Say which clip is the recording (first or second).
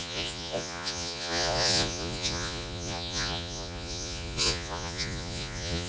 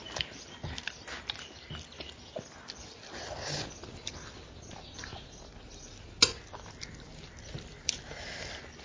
second